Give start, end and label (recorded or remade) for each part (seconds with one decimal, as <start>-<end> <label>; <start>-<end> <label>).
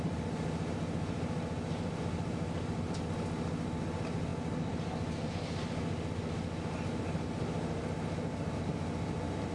0.0-9.5 recorded